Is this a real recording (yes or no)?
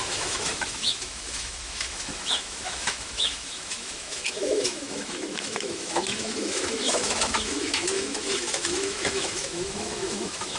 no